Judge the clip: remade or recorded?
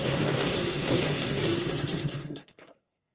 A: remade